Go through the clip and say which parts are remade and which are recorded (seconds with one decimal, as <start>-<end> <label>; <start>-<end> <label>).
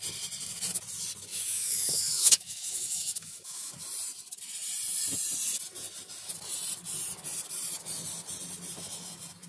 0.0-1.3 recorded; 1.3-3.7 remade; 3.7-9.5 recorded